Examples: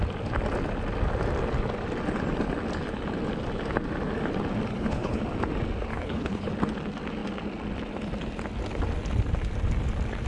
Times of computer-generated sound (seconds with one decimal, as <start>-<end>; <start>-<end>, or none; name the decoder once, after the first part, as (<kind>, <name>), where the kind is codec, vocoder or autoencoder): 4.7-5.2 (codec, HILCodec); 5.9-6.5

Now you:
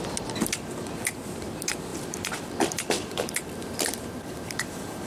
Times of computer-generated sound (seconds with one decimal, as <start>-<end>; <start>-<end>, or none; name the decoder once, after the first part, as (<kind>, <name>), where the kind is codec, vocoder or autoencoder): 1.9-5.1 (vocoder, BigVGAN v2)

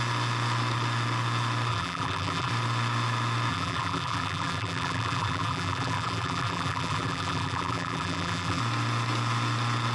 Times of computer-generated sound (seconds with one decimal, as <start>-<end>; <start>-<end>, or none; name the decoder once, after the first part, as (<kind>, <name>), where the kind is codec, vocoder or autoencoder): 1.7-2.5 (vocoder, BigVGAN v2); 3.5-8.6